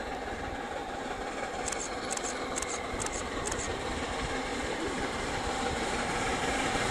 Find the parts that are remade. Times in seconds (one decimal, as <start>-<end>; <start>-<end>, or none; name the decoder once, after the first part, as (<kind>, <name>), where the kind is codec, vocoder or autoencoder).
0.0-0.8 (vocoder, BigVGAN v2); 2.9-6.9